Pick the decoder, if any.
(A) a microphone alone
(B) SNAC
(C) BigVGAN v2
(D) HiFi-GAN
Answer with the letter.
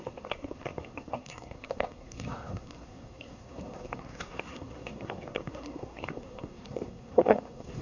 B